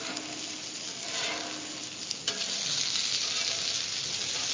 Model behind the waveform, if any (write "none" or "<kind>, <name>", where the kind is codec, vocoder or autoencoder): none